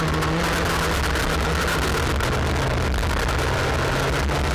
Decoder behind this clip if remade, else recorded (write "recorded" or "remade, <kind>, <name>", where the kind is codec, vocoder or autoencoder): recorded